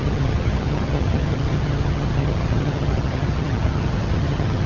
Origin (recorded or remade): remade